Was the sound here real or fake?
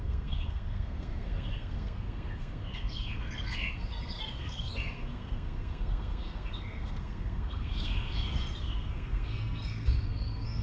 fake